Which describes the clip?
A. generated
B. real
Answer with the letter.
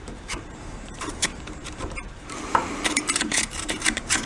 A